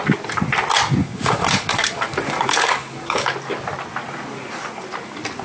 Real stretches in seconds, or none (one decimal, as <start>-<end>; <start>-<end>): 0.0-1.0; 3.3-5.4